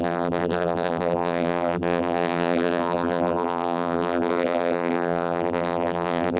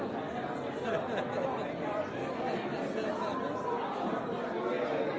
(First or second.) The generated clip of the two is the first